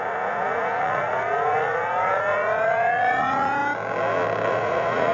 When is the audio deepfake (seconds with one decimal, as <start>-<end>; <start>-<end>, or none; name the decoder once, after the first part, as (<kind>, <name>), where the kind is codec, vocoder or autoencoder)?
0.0-3.6 (vocoder, Vocos); 4.5-5.1